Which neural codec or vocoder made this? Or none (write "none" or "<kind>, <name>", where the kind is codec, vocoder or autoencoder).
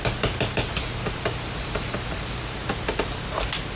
none